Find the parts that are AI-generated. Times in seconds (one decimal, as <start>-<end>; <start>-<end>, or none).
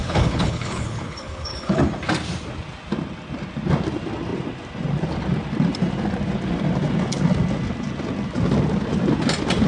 0.0-1.8